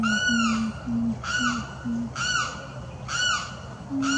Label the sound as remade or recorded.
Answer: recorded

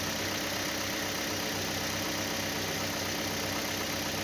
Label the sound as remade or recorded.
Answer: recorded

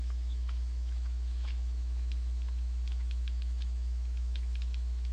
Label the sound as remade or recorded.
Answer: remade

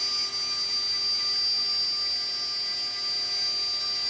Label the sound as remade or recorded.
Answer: recorded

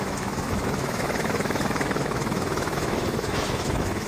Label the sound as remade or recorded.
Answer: remade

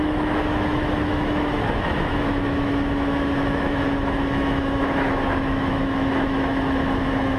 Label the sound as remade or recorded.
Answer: remade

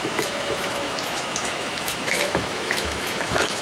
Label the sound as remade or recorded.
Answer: remade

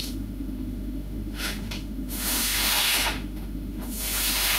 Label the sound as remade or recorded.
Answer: remade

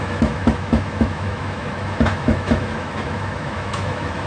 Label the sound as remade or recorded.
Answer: remade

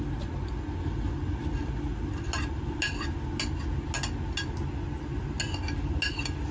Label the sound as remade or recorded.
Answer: recorded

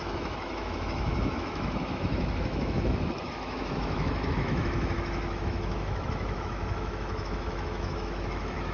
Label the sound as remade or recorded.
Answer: remade